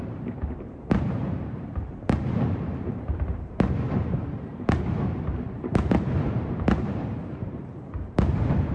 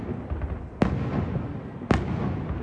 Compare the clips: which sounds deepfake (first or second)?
first